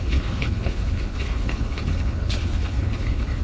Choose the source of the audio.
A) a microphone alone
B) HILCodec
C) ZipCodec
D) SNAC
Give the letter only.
B